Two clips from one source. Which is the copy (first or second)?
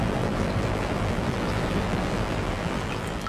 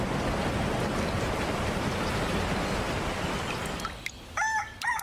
first